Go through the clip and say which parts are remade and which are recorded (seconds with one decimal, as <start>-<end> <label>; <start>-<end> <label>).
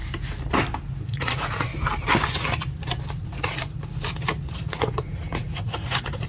0.0-1.0 recorded; 1.0-1.7 remade; 1.7-3.2 recorded; 3.2-3.9 remade; 3.9-4.5 recorded; 4.5-6.3 remade